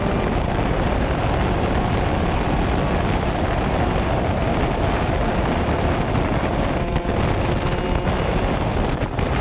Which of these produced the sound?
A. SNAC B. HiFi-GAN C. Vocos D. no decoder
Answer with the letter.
D